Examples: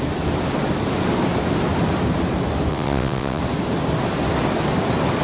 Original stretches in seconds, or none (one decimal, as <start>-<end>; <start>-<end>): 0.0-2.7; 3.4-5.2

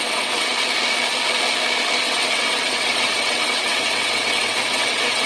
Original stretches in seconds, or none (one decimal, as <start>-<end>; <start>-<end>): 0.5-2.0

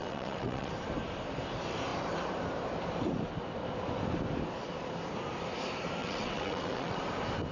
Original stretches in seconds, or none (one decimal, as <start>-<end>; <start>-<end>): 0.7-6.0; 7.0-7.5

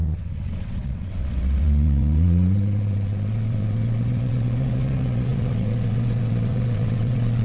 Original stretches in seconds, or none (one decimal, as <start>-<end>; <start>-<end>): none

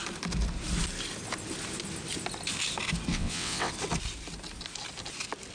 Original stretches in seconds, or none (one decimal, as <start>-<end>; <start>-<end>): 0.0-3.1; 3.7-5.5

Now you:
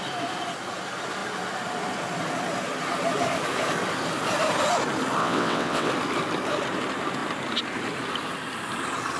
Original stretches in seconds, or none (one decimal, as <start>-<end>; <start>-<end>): 0.0-5.2; 5.9-9.2

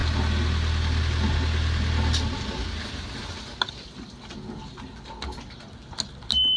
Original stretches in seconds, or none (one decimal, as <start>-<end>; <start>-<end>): 0.0-6.6